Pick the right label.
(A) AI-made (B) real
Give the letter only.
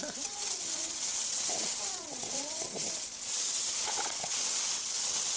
A